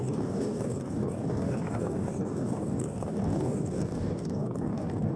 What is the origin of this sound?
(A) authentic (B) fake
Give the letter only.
B